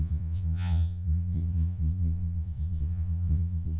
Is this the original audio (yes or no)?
no